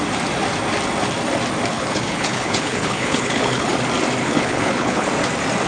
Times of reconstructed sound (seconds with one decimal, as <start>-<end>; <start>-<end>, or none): 1.7-3.7; 4.2-5.1

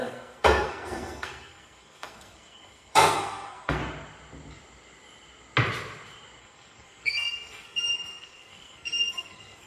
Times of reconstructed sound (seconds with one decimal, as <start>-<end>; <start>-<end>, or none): 0.0-3.8; 6.4-9.7